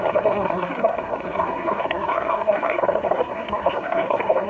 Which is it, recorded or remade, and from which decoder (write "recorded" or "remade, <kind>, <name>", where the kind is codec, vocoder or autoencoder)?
remade, codec, SNAC